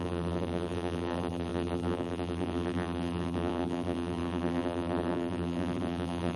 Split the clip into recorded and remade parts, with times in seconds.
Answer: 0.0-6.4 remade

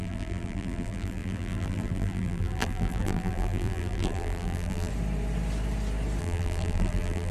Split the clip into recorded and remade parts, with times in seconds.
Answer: 0.0-4.9 remade; 4.9-6.2 recorded; 6.2-7.3 remade

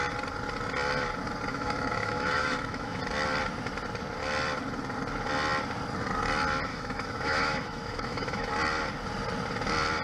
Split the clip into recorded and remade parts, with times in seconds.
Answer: 0.0-1.5 recorded; 1.5-3.0 remade; 3.0-6.7 recorded; 6.7-8.5 remade; 8.5-10.0 recorded

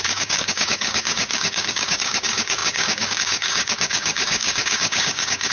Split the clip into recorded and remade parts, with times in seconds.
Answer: 0.0-5.5 remade

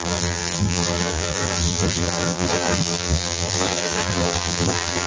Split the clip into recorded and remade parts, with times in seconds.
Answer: 0.0-5.1 remade

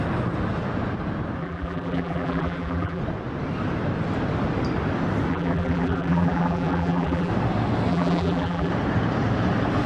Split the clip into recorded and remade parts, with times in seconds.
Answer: 0.0-1.4 recorded; 1.4-3.0 remade; 3.0-5.3 recorded; 5.3-7.3 remade; 7.3-7.9 recorded; 7.9-8.7 remade; 8.7-9.9 recorded

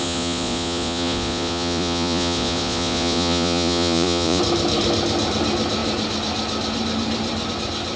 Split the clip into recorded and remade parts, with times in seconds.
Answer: 0.0-4.4 remade; 4.4-8.0 recorded